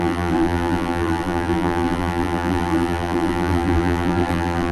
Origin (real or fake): fake